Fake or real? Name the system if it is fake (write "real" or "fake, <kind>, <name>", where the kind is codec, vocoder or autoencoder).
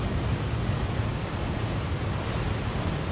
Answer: real